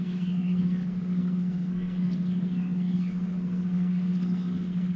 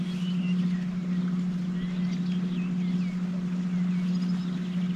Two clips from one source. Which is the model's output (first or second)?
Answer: first